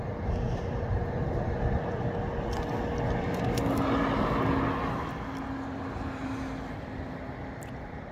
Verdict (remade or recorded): recorded